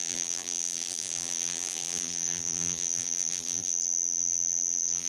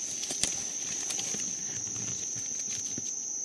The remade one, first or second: first